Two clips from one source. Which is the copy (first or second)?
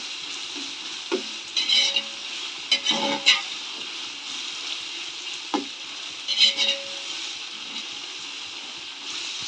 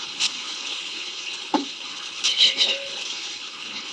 second